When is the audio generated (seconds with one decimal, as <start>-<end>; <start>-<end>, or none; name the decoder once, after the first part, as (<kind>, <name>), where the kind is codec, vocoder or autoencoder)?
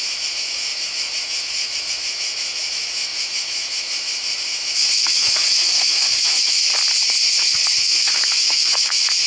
0.0-6.7 (autoencoder, DAC-VAE); 7.3-9.3